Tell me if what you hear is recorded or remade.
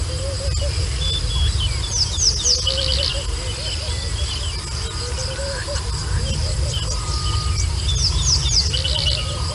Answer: recorded